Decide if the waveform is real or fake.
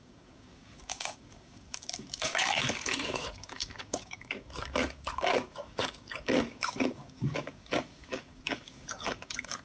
fake